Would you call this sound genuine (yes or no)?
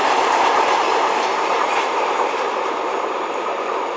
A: no